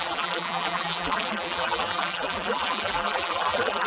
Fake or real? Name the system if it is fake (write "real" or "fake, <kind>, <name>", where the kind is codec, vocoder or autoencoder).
fake, vocoder, BigVGAN v2